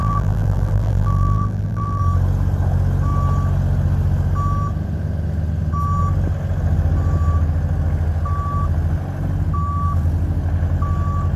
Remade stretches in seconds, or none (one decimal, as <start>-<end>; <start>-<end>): 0.0-2.0